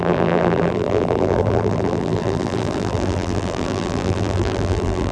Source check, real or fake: fake